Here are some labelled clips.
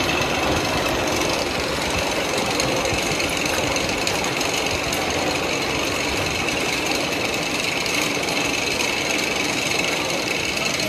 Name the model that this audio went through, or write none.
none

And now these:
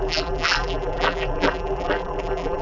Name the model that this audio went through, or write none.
vocoder, BigVGAN v2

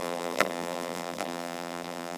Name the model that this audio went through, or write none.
vocoder, BigVGAN v2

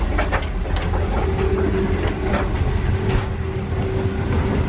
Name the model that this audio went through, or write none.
none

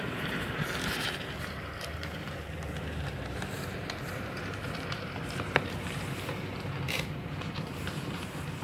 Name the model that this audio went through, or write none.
vocoder, BigVGAN v2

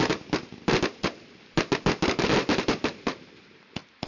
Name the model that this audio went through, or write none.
none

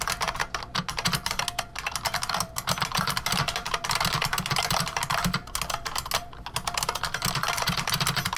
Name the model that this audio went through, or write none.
none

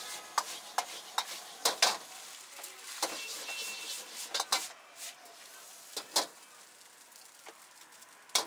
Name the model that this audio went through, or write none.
none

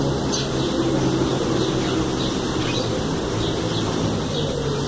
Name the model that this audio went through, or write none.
none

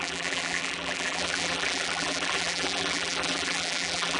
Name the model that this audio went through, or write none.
vocoder, BigVGAN v2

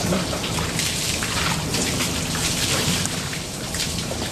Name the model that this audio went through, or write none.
vocoder, BigVGAN v2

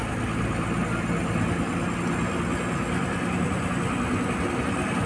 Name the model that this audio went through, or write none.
none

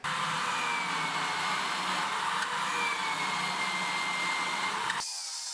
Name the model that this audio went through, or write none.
none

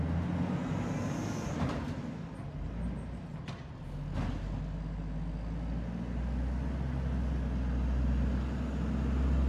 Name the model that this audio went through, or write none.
none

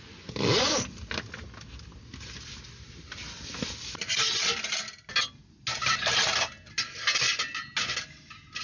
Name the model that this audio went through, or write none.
none